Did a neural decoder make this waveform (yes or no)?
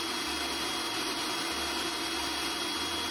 no